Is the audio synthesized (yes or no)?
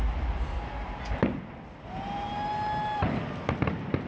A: no